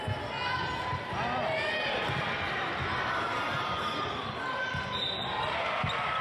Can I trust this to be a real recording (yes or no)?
yes